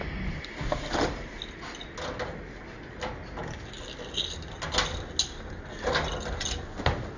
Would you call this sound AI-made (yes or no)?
no